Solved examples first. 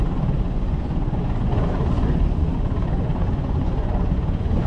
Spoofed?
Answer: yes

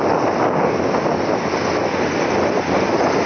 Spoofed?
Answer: no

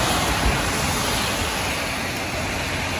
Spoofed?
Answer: no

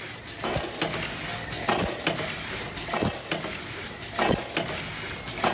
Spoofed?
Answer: no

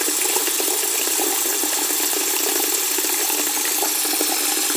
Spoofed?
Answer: no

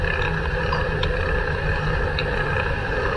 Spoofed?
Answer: no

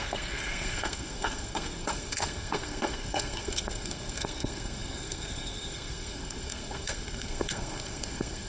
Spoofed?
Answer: yes